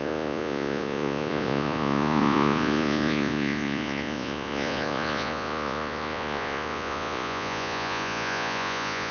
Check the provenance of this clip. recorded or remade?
remade